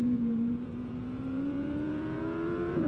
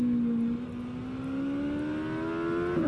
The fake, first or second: first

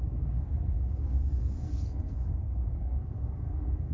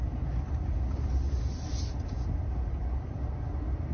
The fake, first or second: first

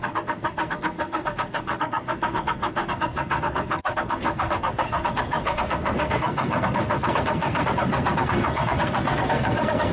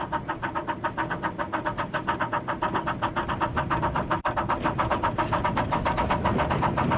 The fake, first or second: first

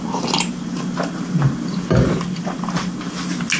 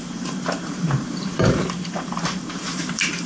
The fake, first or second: second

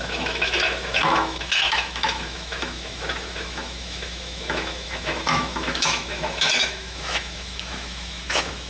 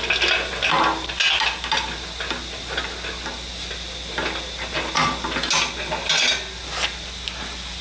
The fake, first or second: first